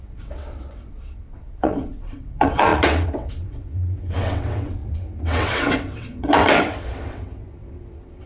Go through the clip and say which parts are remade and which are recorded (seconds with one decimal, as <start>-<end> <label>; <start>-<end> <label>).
0.0-8.3 remade